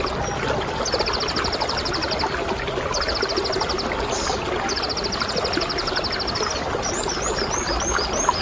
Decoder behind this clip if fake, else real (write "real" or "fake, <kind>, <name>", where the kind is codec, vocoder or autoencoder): real